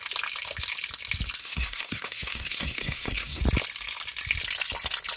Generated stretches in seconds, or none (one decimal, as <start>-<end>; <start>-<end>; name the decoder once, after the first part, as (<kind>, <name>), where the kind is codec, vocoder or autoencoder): 1.4-3.4 (codec, SNAC)